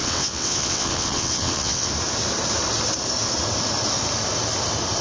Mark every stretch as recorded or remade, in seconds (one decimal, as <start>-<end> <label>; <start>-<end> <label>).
0.0-1.9 remade; 1.9-5.0 recorded